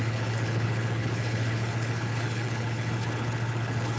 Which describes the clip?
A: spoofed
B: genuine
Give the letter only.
A